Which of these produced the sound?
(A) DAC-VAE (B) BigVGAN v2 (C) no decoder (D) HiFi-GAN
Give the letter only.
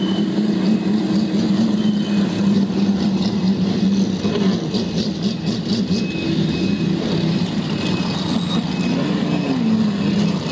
C